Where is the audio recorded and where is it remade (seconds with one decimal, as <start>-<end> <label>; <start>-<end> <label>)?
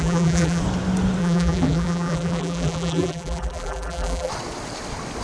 0.0-0.6 remade; 0.6-1.2 recorded; 1.2-4.3 remade; 4.3-5.2 recorded